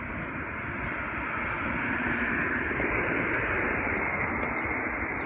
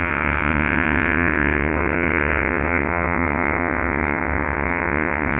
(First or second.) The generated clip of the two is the second